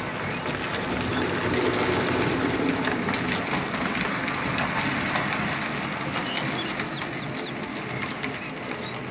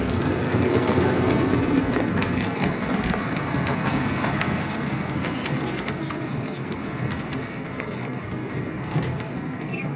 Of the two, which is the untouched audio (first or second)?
first